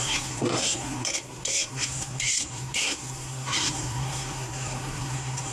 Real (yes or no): no